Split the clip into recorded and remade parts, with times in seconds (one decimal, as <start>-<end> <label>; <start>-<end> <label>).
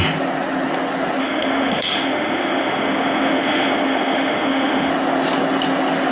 0.0-1.2 recorded; 1.2-4.9 remade; 4.9-6.1 recorded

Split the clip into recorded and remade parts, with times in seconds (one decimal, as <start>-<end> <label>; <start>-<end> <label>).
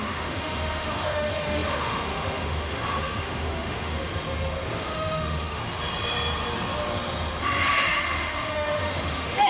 0.0-4.1 remade; 4.1-4.8 recorded; 4.8-5.6 remade; 5.6-7.4 recorded; 7.4-9.5 remade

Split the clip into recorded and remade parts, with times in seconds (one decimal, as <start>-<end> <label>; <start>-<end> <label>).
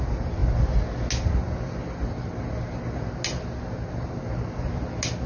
0.0-5.3 recorded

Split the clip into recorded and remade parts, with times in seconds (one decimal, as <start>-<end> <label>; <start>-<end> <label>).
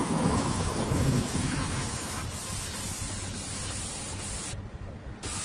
0.0-2.2 remade; 2.2-5.4 recorded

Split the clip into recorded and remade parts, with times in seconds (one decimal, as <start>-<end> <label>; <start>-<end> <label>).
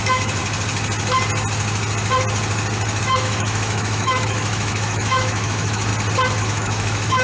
0.0-0.4 remade; 0.4-3.0 recorded; 3.0-5.9 remade; 5.9-6.4 recorded; 6.4-7.2 remade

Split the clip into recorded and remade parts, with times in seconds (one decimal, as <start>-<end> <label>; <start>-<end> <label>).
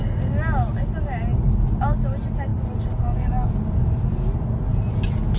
0.0-5.4 recorded